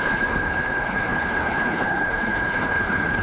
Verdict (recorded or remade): remade